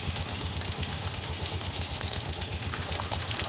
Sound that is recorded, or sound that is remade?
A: remade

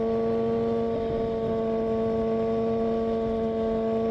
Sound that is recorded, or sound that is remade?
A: recorded